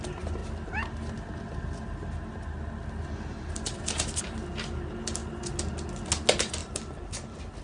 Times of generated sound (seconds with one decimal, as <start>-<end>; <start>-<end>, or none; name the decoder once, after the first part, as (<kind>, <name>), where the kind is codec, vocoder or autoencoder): none